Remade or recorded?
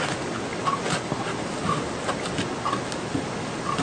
recorded